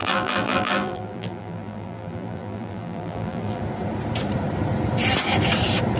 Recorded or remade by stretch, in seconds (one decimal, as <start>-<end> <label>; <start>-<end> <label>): 0.0-3.6 remade; 3.6-6.0 recorded